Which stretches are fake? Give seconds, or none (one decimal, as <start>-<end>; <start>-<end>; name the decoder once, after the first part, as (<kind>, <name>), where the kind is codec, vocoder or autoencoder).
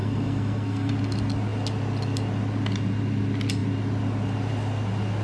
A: 0.0-0.9 (codec, SNAC)